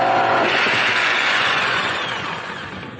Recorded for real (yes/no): no